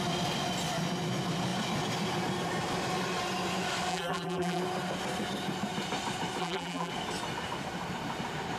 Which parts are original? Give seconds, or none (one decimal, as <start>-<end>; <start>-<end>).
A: 0.0-3.9; 4.6-6.4; 6.9-8.6